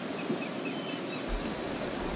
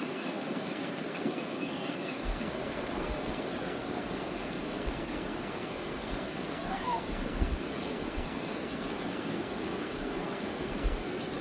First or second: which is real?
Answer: first